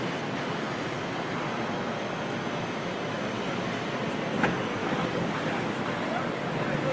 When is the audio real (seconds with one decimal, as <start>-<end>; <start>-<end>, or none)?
0.0-4.8; 5.3-6.9

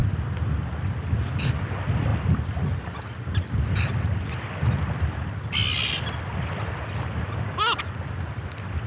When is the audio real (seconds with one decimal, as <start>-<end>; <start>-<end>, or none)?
0.0-8.9

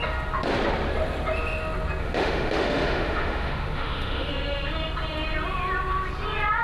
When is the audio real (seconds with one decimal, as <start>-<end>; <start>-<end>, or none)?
0.0-2.0; 4.3-6.6

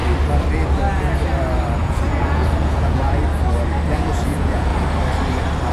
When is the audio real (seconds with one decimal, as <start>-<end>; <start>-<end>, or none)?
0.0-1.8; 3.2-3.9; 4.7-5.7

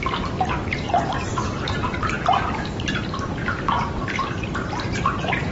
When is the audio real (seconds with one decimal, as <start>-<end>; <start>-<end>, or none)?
none

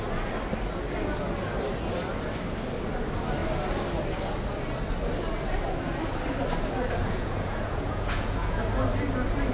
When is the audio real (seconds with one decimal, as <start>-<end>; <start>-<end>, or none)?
0.0-7.0; 8.6-9.5